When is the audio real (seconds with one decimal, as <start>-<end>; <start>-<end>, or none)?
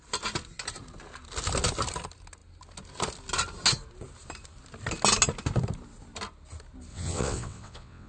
0.0-6.9